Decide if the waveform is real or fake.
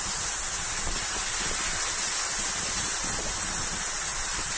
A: real